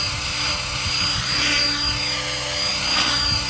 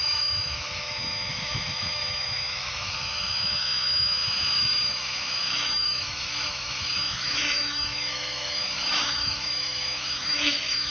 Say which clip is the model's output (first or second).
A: second